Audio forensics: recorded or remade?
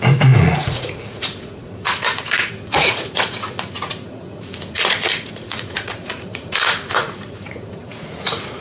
remade